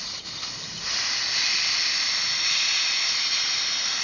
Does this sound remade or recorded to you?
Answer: recorded